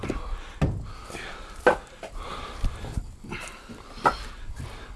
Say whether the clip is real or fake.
real